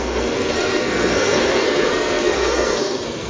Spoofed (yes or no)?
yes